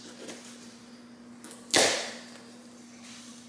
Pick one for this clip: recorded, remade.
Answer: recorded